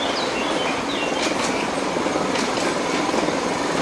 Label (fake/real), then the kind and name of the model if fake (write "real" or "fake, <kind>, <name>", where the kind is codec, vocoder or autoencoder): fake, vocoder, BigVGAN v2